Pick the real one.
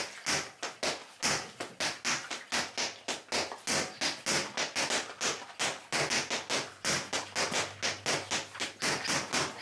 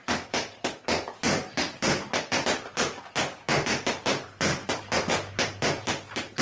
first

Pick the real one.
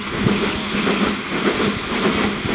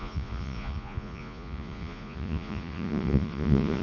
first